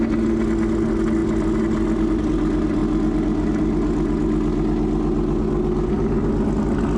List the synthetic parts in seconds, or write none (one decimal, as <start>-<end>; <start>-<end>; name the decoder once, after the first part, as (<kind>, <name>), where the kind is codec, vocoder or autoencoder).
none